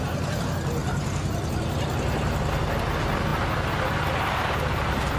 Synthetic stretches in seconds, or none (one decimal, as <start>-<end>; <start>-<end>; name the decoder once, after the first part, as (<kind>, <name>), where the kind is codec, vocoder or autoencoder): 0.8-1.5 (vocoder, BigVGAN v2)